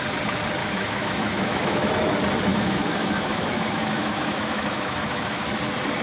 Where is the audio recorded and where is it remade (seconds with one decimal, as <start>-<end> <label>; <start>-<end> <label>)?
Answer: 0.0-0.6 recorded; 0.6-1.9 remade; 1.9-2.5 recorded; 2.5-5.5 remade; 5.5-6.0 recorded